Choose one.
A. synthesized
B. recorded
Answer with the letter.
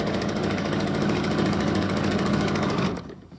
A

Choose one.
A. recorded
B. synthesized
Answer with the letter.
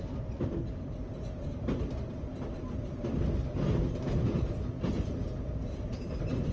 B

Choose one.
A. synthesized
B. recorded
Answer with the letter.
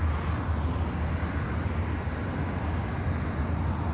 B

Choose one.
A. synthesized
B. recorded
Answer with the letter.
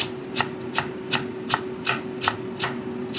B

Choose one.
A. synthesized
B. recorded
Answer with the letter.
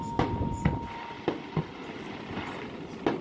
B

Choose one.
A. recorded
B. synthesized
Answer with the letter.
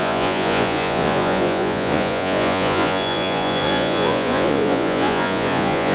B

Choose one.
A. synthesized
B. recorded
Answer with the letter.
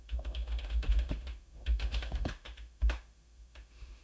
A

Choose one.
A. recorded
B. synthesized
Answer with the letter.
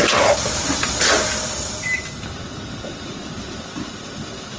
A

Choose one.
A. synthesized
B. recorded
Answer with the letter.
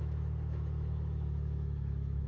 A